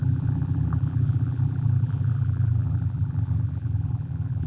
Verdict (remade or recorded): remade